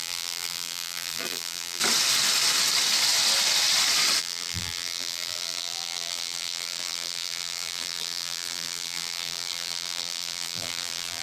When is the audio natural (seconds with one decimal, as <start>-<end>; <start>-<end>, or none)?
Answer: 1.8-4.2